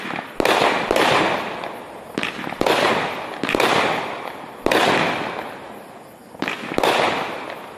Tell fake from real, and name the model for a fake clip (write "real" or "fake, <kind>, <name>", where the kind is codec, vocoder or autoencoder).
real